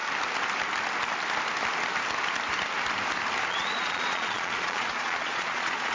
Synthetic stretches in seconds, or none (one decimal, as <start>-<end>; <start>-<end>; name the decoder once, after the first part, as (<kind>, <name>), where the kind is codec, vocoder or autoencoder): 3.5-5.9 (vocoder, Vocos)